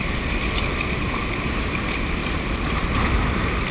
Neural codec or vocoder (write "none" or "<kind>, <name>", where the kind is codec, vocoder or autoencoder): none